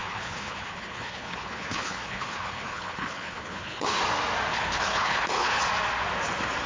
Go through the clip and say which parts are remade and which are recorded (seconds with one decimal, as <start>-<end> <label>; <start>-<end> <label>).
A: 0.0-4.0 remade; 4.0-4.5 recorded; 4.5-5.6 remade; 5.6-6.7 recorded